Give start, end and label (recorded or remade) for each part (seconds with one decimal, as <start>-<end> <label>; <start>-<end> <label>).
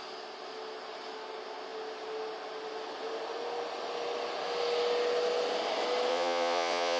0.0-6.1 recorded; 6.1-7.0 remade